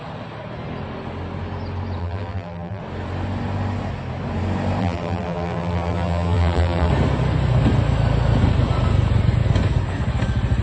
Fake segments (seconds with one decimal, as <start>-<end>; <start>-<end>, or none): 2.0-2.8; 4.8-6.9